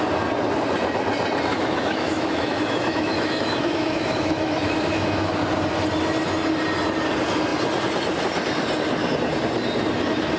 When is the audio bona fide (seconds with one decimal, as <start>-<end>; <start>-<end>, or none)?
0.0-1.5; 5.3-10.4